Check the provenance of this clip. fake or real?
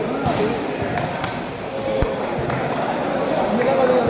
real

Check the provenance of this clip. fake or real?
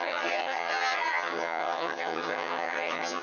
fake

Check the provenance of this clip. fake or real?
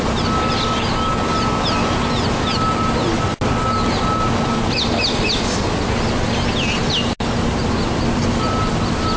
real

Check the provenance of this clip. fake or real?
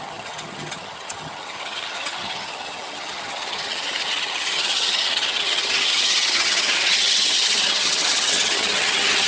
fake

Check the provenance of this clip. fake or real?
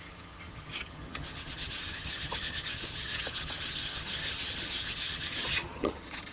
fake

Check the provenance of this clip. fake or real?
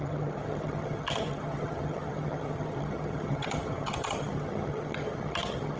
fake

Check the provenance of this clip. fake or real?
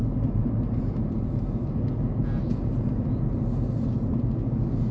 real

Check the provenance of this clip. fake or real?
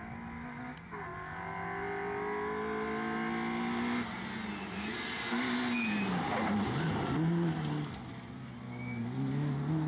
real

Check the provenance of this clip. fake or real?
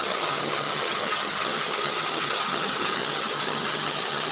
fake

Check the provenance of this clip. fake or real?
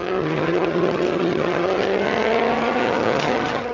fake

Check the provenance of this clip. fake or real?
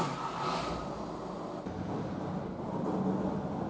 real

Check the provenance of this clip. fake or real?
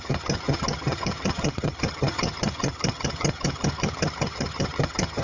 fake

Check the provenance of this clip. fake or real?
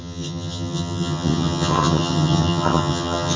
fake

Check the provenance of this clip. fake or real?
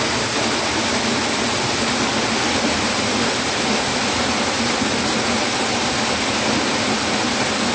real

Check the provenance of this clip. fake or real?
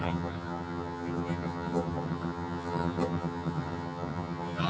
fake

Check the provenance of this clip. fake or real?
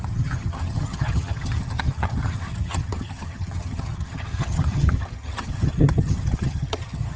fake